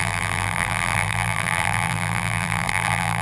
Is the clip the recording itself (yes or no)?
no